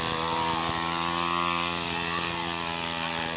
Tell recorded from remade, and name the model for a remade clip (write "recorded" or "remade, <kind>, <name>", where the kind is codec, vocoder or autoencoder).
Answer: recorded